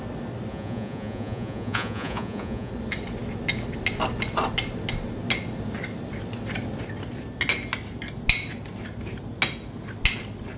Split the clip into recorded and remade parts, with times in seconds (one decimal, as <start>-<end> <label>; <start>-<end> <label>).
0.0-0.5 recorded; 0.5-2.7 remade; 2.7-10.6 recorded